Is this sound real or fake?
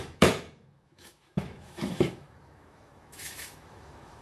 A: fake